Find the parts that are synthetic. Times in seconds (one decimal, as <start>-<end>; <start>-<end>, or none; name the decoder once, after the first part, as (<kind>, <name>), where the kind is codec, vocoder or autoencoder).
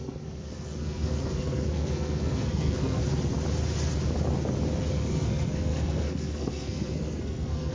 0.0-3.0 (codec, SNAC); 4.9-7.7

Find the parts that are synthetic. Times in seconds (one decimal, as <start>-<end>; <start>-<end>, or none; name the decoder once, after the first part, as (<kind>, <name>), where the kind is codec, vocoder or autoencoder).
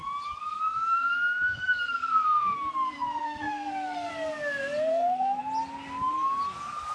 0.4-2.7 (codec, SNAC); 3.2-4.1; 4.9-5.4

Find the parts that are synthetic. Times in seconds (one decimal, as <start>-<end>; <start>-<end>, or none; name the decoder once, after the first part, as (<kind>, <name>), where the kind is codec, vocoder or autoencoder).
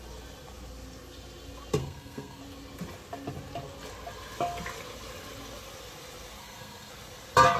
1.8-2.4 (codec, SNAC); 6.4-6.9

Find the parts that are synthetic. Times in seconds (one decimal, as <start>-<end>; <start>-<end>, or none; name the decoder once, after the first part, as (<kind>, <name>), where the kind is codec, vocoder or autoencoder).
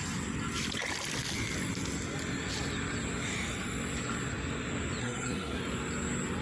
5.0-5.6 (codec, SNAC)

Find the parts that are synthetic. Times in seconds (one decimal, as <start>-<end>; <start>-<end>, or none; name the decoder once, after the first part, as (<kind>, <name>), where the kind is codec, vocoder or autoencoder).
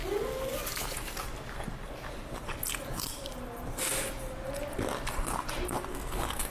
5.9-6.5 (codec, SNAC)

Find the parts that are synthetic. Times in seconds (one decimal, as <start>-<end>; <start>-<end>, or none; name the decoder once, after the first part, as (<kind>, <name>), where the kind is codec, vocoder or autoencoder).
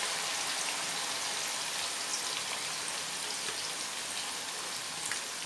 none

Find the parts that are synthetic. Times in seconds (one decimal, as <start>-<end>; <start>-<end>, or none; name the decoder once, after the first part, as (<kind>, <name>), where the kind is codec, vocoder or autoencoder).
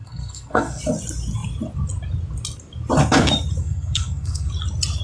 0.0-0.8 (codec, SNAC); 3.6-4.5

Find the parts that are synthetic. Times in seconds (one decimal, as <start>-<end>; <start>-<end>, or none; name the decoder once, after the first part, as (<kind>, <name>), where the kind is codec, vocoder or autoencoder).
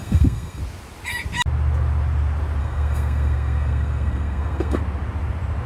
0.0-0.6 (codec, SNAC); 2.6-4.8